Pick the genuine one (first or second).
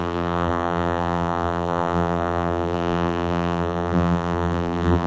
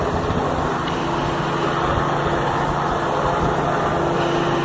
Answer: second